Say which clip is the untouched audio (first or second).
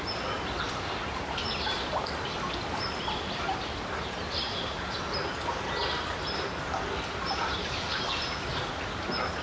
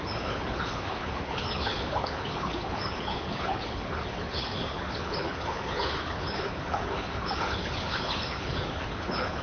first